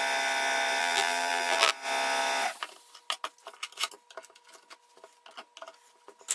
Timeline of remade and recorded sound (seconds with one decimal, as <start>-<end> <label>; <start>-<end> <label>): 0.0-0.8 recorded; 0.8-1.7 remade; 1.7-6.3 recorded